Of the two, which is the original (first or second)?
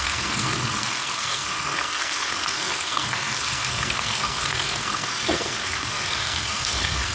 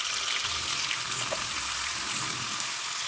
second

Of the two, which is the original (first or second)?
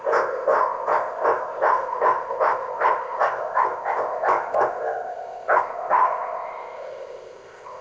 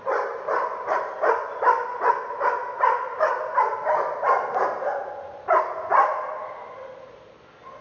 second